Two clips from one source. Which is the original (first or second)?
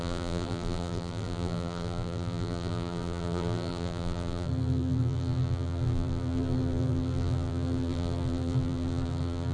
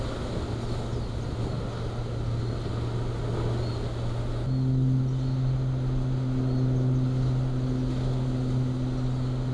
second